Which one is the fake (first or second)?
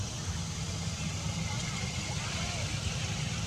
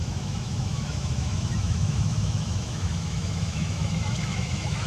second